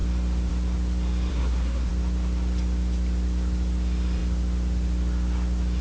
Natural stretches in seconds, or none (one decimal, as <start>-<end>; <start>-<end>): 0.0-1.3; 1.9-5.8